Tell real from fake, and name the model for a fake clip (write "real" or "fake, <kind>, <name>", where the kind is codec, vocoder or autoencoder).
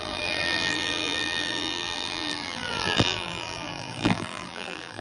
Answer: fake, vocoder, BigVGAN v2